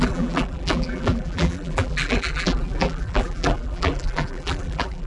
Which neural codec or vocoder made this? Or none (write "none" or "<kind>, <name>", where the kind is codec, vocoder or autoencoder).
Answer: vocoder, BigVGAN v2